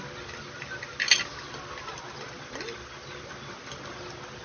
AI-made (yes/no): no